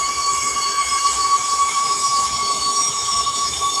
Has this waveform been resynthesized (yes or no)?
yes